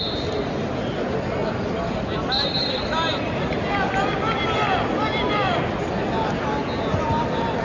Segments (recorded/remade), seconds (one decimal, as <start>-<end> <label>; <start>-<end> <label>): 0.0-1.4 recorded; 1.4-3.3 remade; 3.3-7.6 recorded